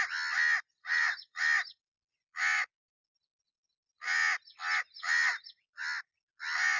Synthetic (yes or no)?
no